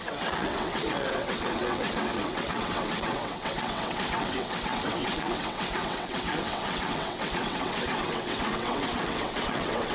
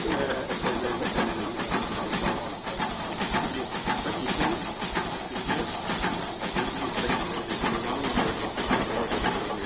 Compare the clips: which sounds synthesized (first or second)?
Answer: first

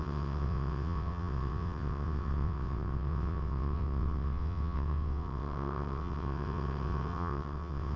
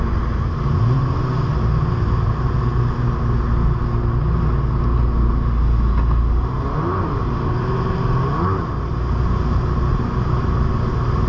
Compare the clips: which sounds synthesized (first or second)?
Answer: first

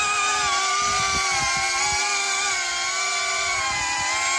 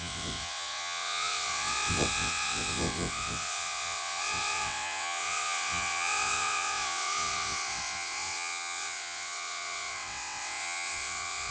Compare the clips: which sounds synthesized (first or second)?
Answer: second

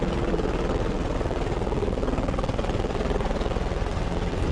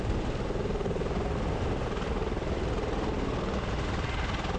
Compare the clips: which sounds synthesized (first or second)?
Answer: first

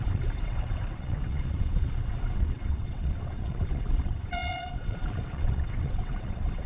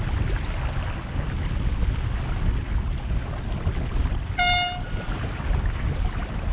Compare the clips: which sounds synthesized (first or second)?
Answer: first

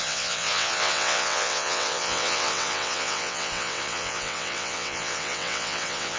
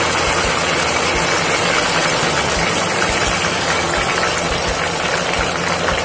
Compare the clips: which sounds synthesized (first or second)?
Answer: first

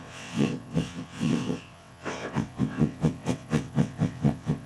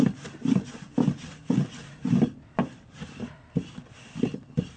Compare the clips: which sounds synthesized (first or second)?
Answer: first